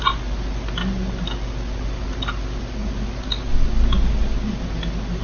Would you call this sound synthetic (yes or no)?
no